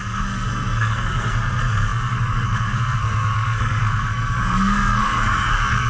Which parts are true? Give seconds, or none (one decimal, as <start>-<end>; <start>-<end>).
none